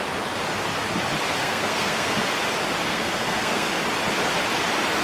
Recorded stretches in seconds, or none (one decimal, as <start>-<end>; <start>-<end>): 0.0-1.4; 2.2-2.8; 3.7-5.0